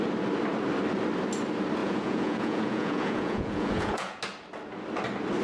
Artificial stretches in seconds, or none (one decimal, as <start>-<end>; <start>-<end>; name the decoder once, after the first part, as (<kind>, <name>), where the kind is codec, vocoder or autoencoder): 1.8-4.2 (vocoder, Vocos)